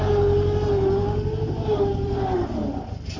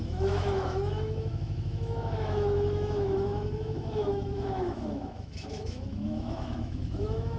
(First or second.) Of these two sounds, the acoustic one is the first